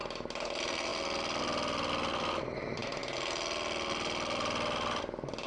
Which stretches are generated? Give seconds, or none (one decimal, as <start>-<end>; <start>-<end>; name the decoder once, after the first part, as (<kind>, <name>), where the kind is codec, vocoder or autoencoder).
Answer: none